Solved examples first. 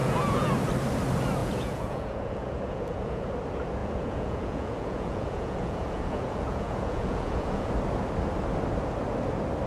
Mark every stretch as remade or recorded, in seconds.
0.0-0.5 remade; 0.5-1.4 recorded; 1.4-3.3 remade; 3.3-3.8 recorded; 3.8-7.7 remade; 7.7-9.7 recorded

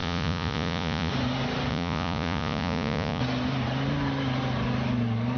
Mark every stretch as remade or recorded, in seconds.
0.0-1.1 remade; 1.1-1.7 recorded; 1.7-3.2 remade; 3.2-5.4 recorded